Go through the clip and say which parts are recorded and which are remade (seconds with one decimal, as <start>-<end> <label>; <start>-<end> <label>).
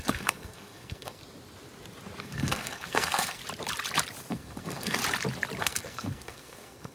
0.0-1.2 remade; 1.2-2.2 recorded; 2.2-3.4 remade; 3.4-4.3 recorded; 4.3-5.0 remade; 5.0-5.6 recorded; 5.6-6.9 remade